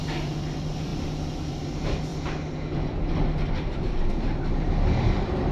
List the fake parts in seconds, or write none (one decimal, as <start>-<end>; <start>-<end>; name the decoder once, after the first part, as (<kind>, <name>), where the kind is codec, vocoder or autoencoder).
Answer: 0.0-2.1 (vocoder, BigVGAN v2); 4.9-5.5